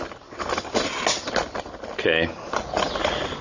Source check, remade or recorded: recorded